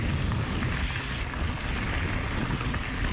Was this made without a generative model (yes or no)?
yes